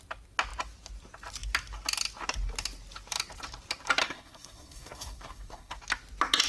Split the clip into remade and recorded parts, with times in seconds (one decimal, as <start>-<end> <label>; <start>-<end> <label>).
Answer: 0.0-4.0 recorded; 4.0-5.8 remade; 5.8-6.5 recorded